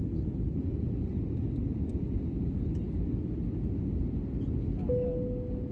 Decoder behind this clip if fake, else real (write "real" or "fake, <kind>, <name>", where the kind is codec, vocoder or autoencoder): real